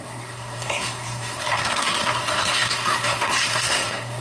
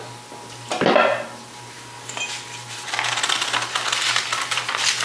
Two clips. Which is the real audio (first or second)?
second